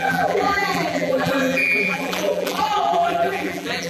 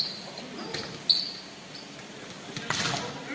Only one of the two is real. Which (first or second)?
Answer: second